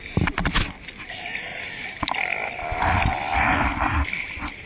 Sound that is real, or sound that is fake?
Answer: fake